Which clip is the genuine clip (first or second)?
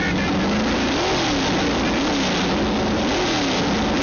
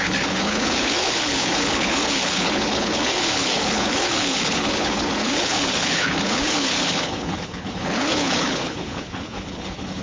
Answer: first